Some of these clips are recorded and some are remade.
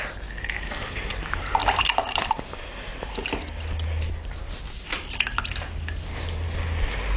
recorded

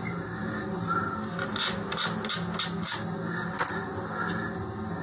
recorded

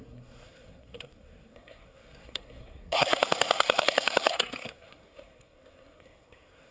remade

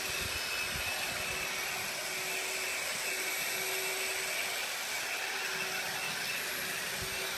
recorded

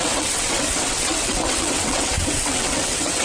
remade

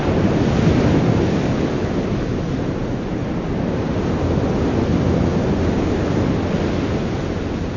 recorded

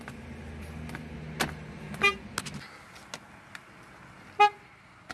recorded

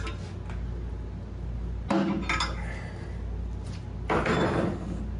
recorded